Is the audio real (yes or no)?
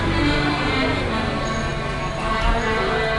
yes